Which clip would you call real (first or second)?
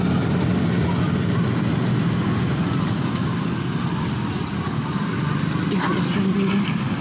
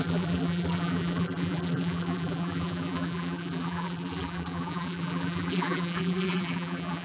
first